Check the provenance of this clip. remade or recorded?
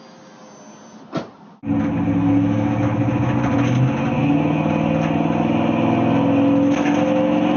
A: recorded